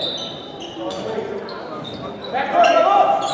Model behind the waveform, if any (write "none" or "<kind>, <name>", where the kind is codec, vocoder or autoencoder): vocoder, BigVGAN v2